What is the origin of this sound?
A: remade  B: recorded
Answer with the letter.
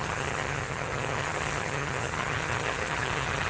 A